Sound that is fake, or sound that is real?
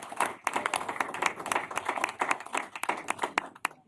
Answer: real